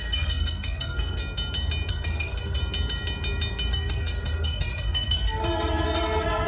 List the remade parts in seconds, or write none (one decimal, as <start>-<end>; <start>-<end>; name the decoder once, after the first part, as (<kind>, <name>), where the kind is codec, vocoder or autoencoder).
0.0-1.2 (codec, SNAC); 1.9-2.6; 3.7-6.5